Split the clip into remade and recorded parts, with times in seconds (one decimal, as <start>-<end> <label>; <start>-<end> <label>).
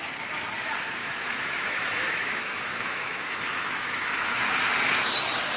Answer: 0.0-1.0 recorded; 1.0-4.4 remade; 4.4-5.6 recorded